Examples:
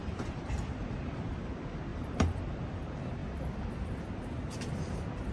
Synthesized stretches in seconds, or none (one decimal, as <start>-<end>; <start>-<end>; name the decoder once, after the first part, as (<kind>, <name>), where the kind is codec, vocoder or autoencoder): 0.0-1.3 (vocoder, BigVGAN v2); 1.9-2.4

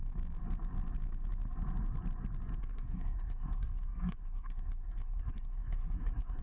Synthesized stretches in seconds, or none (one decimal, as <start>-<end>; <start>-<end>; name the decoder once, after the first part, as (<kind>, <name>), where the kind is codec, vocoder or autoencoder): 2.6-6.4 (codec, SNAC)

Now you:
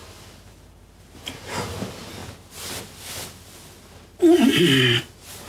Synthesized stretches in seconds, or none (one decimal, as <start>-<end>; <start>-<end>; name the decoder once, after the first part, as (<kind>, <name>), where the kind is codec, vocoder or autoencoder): 0.0-1.7 (vocoder, BigVGAN v2)